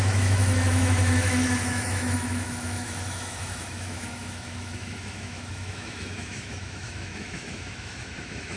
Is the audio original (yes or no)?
no